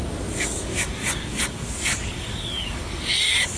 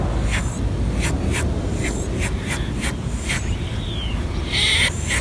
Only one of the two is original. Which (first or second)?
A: second